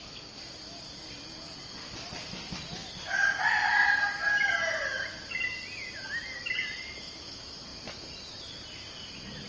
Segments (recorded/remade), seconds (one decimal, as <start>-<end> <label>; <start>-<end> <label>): 0.0-9.5 recorded